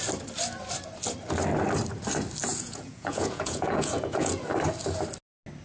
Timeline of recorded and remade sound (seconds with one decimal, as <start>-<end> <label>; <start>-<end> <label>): 0.0-2.5 recorded; 2.5-4.4 remade; 4.4-5.6 recorded